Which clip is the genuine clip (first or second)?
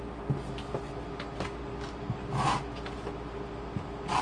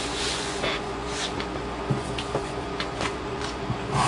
first